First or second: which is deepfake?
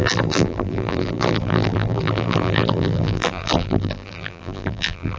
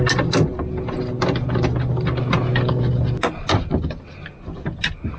first